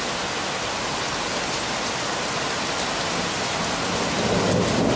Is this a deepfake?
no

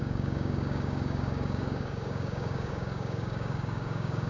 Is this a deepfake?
yes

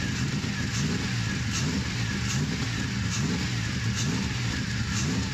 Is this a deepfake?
no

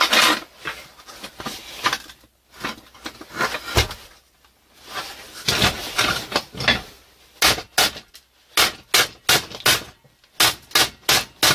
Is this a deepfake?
no